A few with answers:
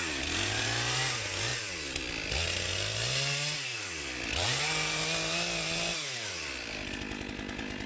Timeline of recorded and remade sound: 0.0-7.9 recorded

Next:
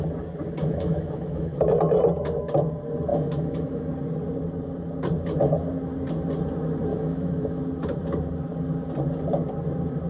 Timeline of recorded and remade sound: 0.0-0.6 recorded; 0.6-1.7 remade; 1.7-3.1 recorded; 3.1-3.9 remade; 3.9-6.9 recorded; 6.9-7.6 remade; 7.6-10.1 recorded

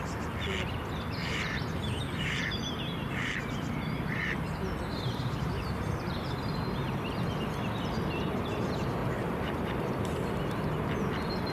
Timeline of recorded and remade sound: 0.0-1.2 recorded; 1.2-6.5 remade; 6.5-9.0 recorded; 9.0-9.9 remade; 9.9-11.5 recorded

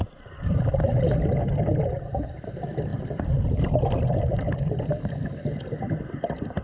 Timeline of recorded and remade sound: 0.0-2.9 remade; 2.9-4.2 recorded; 4.2-6.6 remade

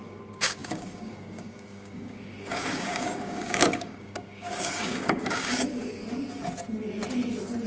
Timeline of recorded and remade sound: 0.0-6.0 remade; 6.0-7.7 recorded

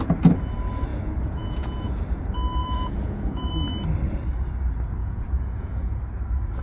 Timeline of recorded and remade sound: 0.0-0.9 recorded; 0.9-2.0 remade; 2.0-2.6 recorded; 2.6-3.5 remade; 3.5-5.0 recorded; 5.0-6.0 remade; 6.0-6.6 recorded